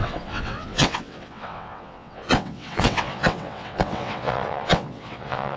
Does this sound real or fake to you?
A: fake